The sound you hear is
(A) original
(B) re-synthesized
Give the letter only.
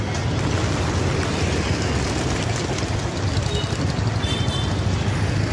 A